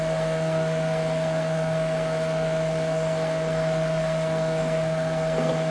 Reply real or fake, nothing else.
fake